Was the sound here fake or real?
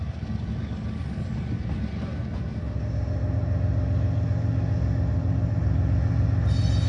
real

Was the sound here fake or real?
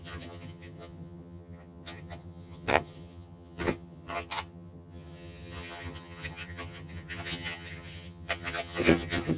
fake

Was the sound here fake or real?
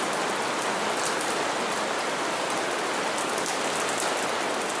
real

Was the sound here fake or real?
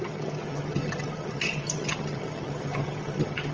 fake